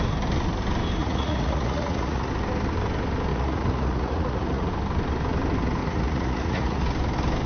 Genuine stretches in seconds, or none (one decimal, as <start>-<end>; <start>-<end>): 0.0-1.0; 2.3-3.3; 4.7-5.8; 6.8-7.5